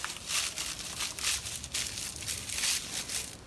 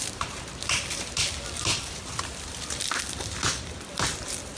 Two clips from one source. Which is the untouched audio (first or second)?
first